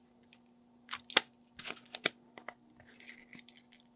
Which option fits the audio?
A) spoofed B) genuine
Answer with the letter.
B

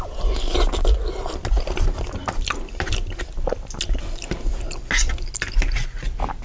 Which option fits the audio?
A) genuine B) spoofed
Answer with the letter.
A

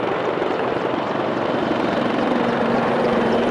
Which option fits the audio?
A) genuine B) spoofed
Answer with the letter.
B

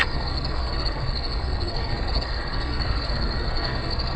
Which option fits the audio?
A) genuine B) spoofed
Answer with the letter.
B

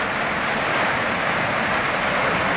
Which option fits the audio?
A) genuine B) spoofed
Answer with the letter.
A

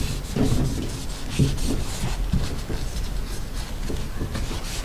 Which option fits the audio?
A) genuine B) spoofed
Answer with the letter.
A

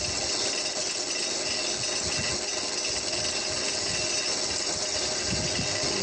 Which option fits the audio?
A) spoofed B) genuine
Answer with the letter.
B